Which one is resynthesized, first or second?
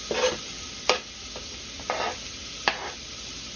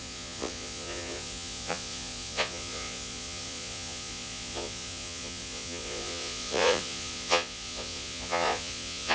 second